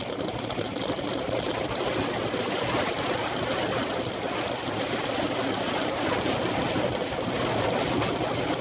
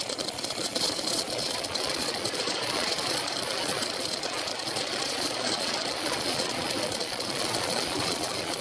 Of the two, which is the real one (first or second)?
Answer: first